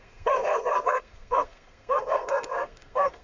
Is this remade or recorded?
remade